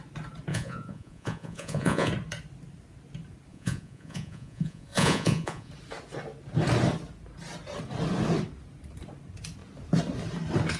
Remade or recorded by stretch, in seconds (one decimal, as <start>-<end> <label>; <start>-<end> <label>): 0.0-0.5 recorded; 0.5-2.1 remade; 2.1-3.5 recorded; 3.5-5.7 remade; 5.7-10.8 recorded